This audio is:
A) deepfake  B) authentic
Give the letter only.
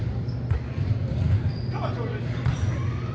A